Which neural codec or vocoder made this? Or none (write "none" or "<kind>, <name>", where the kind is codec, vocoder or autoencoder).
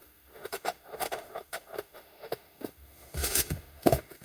autoencoder, DAC-VAE